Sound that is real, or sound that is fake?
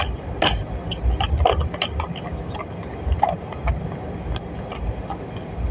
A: real